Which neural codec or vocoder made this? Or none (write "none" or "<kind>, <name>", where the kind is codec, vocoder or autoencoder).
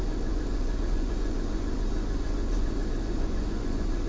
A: vocoder, Vocos